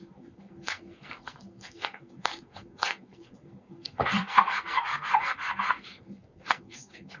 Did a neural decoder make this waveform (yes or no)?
yes